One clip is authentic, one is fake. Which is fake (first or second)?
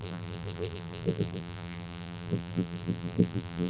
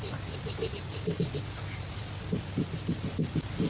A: first